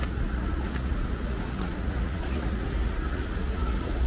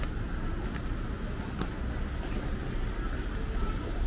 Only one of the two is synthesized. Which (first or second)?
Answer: first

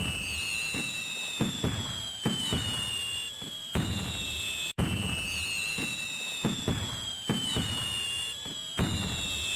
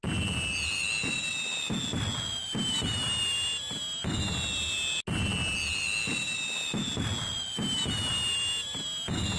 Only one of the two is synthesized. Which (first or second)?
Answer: first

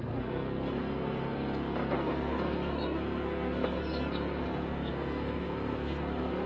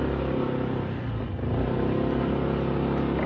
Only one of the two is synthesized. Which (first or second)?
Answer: first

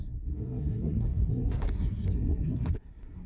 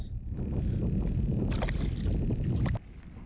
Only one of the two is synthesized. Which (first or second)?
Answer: first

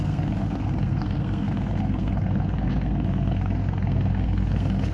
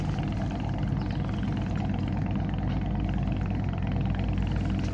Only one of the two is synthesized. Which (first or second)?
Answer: first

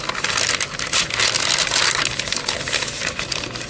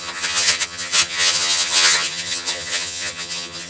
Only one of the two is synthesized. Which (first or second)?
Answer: second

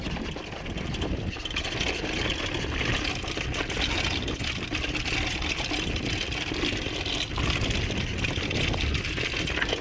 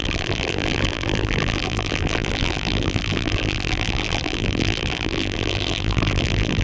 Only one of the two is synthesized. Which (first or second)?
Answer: second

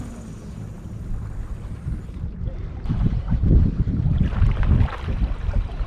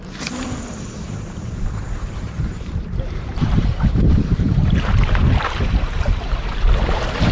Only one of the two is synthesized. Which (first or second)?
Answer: second